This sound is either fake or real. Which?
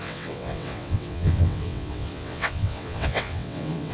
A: fake